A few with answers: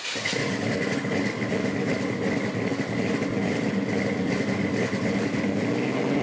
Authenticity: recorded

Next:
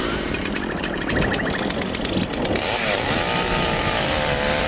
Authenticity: recorded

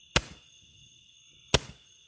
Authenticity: recorded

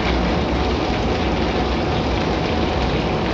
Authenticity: recorded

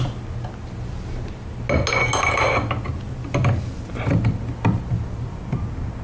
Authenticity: recorded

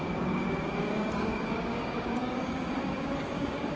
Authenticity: remade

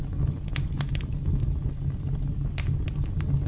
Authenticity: recorded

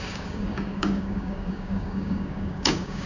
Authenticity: remade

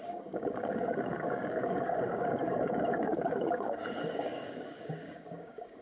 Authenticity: remade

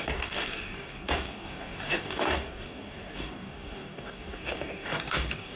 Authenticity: remade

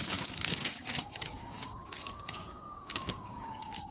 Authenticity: remade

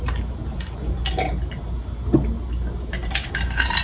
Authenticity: recorded